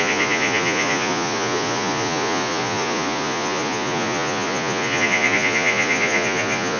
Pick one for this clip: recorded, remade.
remade